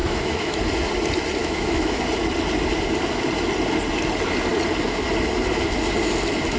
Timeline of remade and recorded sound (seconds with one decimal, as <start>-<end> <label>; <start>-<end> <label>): 0.0-0.6 remade; 0.6-1.4 recorded; 1.4-2.0 remade; 2.0-6.6 recorded